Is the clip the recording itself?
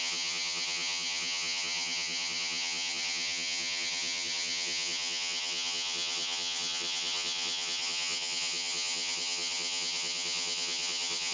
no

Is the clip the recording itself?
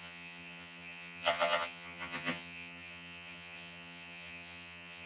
no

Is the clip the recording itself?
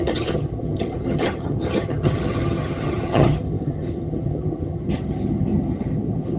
no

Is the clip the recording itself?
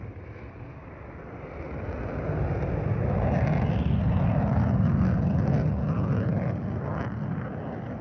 yes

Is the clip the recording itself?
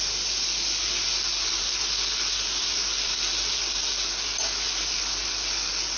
yes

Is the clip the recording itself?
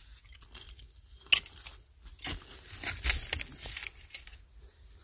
yes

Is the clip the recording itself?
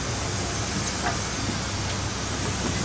yes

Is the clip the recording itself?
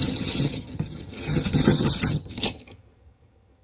no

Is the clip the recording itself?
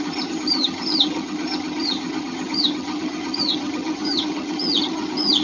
no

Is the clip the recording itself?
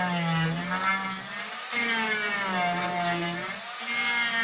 yes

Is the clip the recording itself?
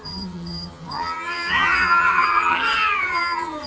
no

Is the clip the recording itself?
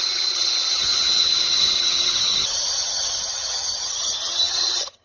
no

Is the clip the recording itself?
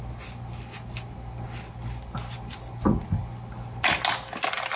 yes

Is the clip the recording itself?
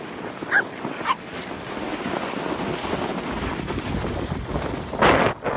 yes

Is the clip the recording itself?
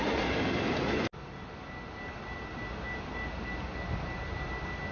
yes